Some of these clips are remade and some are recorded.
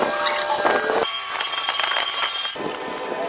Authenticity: recorded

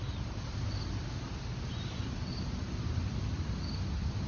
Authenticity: recorded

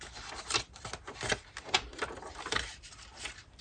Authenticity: recorded